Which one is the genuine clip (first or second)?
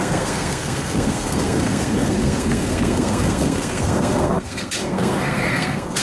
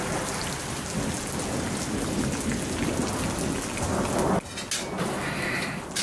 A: second